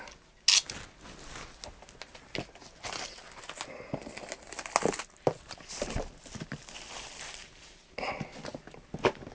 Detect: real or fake real